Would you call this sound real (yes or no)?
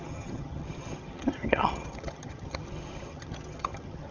no